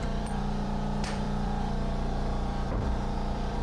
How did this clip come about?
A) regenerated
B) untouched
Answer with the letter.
A